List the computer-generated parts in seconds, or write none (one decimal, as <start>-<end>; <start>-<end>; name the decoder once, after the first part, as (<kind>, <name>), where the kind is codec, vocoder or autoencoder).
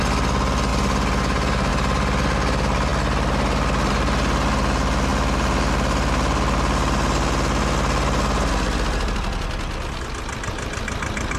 none